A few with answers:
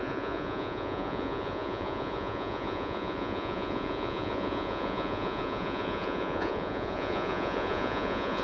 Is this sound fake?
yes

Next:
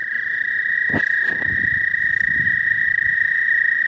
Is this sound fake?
no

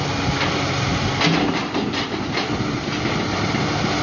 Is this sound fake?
no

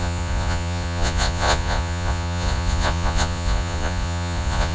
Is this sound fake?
yes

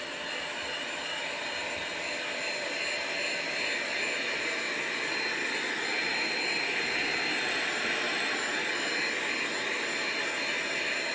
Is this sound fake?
no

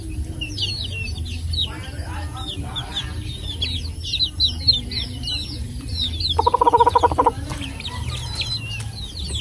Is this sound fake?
no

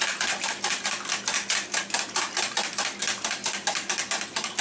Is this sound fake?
no